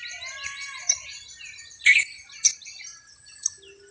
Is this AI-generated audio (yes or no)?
no